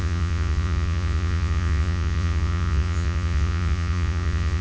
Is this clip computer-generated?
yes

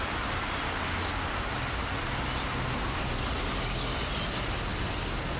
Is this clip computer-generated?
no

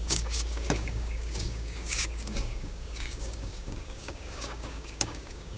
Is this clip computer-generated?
yes